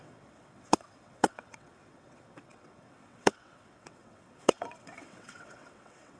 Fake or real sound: fake